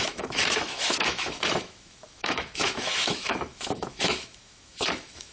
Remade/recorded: remade